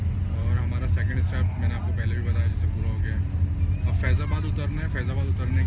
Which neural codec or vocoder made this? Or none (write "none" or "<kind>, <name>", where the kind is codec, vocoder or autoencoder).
none